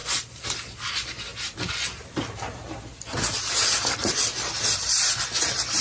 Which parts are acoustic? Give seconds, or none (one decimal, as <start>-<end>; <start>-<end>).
0.9-5.8